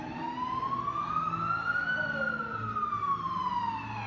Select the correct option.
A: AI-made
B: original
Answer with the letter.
B